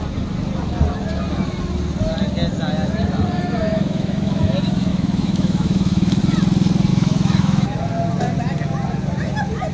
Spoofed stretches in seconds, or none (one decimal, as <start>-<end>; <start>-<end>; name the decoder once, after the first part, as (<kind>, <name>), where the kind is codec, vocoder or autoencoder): 3.4-4.5 (autoencoder, DAC-VAE); 4.9-6.2; 6.9-7.8